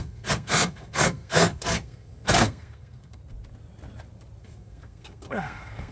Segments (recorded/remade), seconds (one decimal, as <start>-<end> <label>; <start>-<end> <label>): 0.0-3.2 remade; 3.2-4.4 recorded; 4.4-5.9 remade